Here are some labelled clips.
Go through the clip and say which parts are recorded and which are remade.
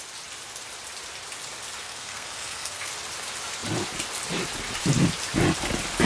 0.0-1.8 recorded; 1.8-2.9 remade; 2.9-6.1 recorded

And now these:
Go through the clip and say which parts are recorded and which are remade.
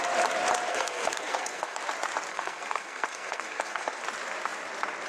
0.0-0.7 recorded; 0.7-1.8 remade; 1.8-2.3 recorded; 2.3-4.0 remade; 4.0-5.1 recorded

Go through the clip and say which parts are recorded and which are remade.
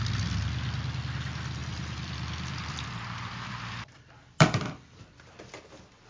0.0-1.6 recorded; 1.6-5.3 remade; 5.3-6.1 recorded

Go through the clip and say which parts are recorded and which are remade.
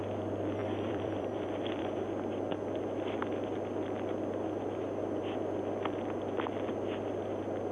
0.0-0.6 recorded; 0.6-2.0 remade; 2.0-7.7 recorded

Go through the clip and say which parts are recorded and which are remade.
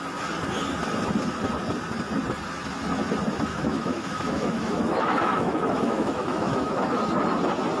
0.0-3.5 recorded; 3.5-7.0 remade; 7.0-7.8 recorded